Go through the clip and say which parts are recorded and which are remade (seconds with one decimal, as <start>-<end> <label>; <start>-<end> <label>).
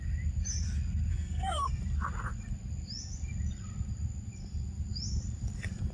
0.0-1.1 recorded; 1.1-1.7 remade; 1.7-5.9 recorded